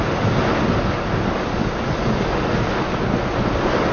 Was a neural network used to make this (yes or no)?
no